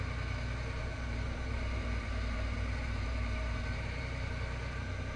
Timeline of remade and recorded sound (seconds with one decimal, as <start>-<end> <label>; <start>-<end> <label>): 0.0-0.9 recorded; 0.9-4.0 remade; 4.0-5.2 recorded